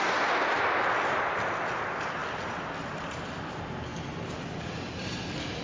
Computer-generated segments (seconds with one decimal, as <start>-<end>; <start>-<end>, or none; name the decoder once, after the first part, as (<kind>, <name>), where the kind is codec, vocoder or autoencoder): none